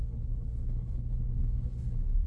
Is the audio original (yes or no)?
no